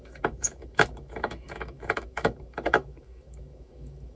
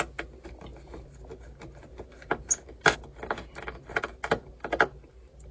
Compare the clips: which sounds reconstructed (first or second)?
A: first